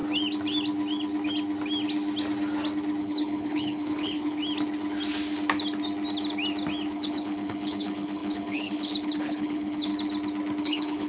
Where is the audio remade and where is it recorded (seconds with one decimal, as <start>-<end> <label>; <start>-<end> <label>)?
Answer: 0.0-3.0 recorded; 3.0-4.4 remade; 4.4-6.9 recorded; 6.9-9.9 remade; 9.9-10.6 recorded; 10.6-11.1 remade